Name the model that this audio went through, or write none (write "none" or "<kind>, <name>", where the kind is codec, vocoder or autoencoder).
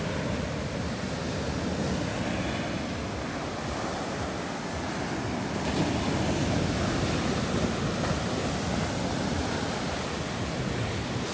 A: none